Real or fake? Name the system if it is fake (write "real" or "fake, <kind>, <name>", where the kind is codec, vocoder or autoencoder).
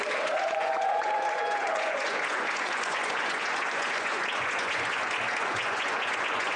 fake, vocoder, Vocos